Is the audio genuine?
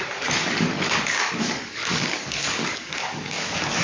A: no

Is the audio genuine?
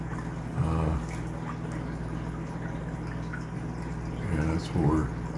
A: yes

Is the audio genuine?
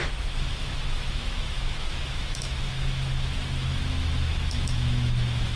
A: no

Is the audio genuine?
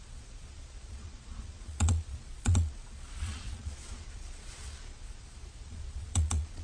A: no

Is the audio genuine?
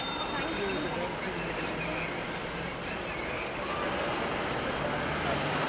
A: yes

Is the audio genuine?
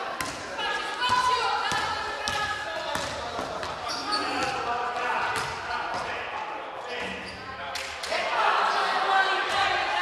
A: yes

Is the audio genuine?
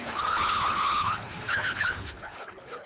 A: no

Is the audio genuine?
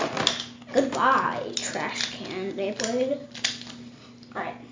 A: yes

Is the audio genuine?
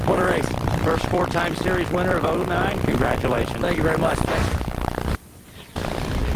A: no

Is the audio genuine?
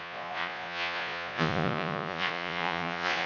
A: no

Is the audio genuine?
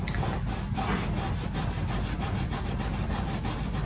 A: yes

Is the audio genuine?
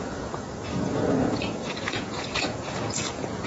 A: no